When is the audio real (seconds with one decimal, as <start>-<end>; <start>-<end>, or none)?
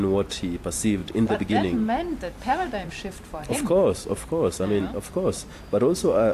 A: 0.0-1.0; 4.8-6.3